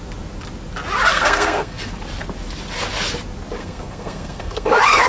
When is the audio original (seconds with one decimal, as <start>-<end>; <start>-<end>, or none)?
0.0-1.1; 1.9-3.6